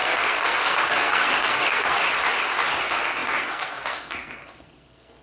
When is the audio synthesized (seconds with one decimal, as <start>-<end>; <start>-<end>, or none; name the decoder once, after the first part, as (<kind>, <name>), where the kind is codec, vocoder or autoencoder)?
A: 0.0-2.0 (codec, SNAC); 2.8-5.2